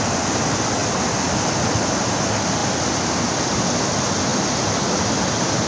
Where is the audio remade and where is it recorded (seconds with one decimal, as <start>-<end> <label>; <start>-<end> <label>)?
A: 0.0-5.7 recorded